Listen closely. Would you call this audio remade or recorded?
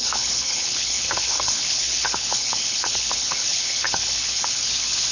remade